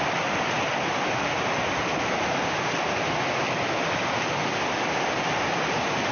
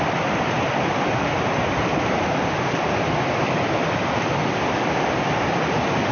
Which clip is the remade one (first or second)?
second